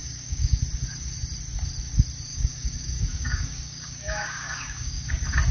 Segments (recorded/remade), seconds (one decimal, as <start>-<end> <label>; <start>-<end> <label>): 0.0-0.6 remade; 0.6-2.3 recorded; 2.3-5.1 remade; 5.1-5.5 recorded